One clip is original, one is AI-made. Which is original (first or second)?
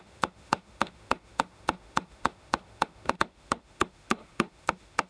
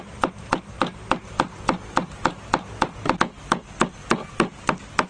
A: second